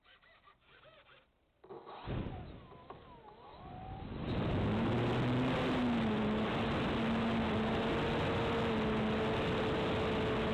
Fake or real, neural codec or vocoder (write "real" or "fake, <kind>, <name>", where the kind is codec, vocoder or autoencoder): real